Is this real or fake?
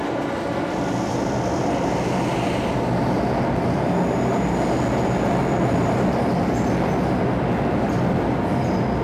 real